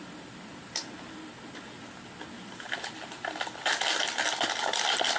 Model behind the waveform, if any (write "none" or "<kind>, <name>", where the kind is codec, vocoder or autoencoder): none